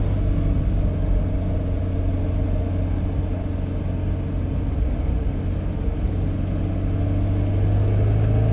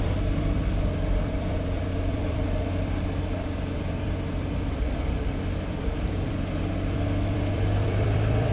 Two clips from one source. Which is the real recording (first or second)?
first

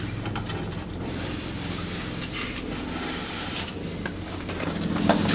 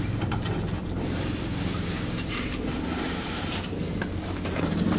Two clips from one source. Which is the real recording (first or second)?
first